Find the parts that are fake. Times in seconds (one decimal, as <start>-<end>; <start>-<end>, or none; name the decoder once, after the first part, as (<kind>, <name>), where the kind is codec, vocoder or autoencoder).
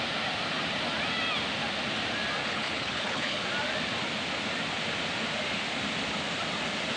2.4-3.4 (codec, HILCodec)